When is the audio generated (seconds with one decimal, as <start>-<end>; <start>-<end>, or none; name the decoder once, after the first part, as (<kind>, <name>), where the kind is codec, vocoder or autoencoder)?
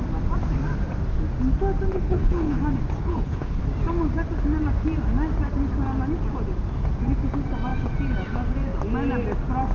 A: 1.9-2.6 (codec, HILCodec); 3.0-3.6